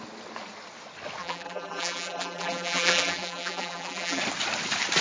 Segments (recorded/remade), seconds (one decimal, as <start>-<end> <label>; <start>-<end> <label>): 0.0-1.2 recorded; 1.2-4.2 remade; 4.2-5.0 recorded